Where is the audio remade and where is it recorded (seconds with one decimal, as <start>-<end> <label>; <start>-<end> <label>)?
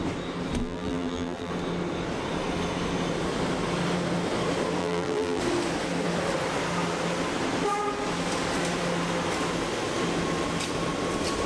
0.0-0.6 recorded; 0.6-1.5 remade; 1.5-4.8 recorded; 4.8-5.4 remade; 5.4-11.5 recorded